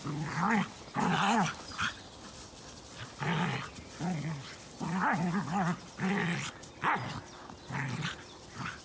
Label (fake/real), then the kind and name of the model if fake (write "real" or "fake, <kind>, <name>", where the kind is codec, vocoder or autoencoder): real